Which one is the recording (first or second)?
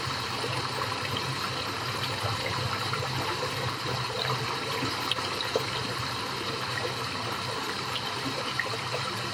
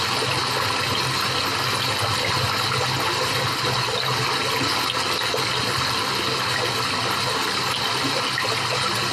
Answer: second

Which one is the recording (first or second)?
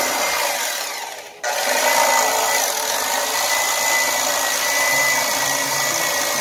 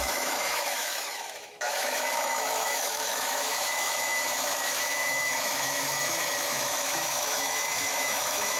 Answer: first